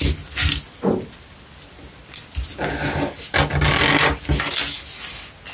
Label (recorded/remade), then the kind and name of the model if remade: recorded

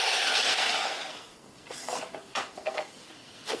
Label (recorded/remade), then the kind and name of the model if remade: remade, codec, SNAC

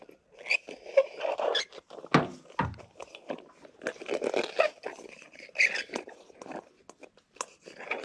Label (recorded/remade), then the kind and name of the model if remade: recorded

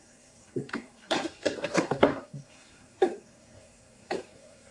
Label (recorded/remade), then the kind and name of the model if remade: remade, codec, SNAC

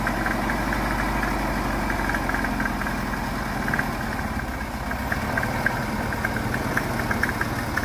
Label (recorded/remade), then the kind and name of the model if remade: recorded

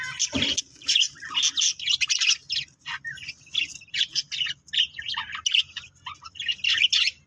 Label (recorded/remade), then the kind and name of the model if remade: recorded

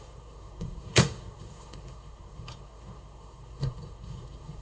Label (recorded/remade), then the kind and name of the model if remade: remade, codec, SNAC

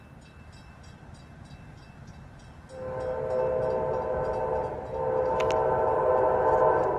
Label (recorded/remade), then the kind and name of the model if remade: recorded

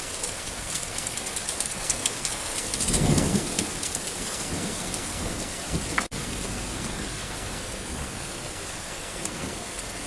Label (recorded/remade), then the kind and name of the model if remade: remade, codec, SNAC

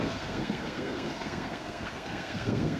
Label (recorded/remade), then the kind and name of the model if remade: remade, codec, SNAC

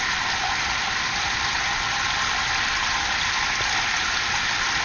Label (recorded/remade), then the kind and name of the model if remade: recorded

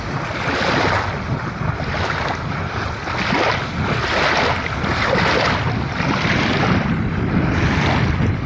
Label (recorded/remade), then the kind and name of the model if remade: recorded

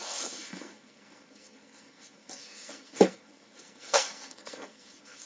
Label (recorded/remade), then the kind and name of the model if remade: remade, codec, SNAC